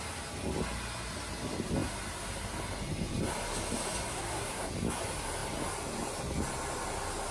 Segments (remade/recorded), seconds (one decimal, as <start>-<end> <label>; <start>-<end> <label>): 0.0-4.1 recorded; 4.1-4.7 remade; 4.7-7.3 recorded